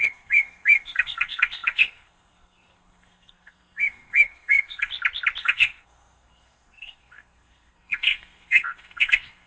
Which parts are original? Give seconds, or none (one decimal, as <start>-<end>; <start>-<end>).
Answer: 4.9-5.4

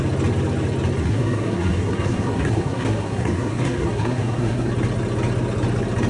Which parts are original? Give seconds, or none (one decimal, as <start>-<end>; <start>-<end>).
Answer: 0.0-1.0; 4.7-6.1